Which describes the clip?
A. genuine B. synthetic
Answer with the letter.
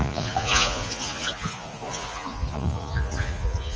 B